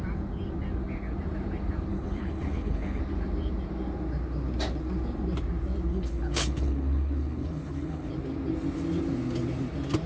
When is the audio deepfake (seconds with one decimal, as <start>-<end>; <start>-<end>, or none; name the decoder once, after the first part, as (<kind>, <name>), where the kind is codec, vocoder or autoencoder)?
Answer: 1.9-3.0 (codec, HILCodec); 5.9-8.1